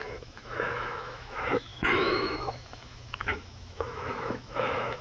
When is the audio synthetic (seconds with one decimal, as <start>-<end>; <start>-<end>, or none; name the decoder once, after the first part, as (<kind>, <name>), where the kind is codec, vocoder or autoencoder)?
0.0-5.0 (autoencoder, DAC-VAE)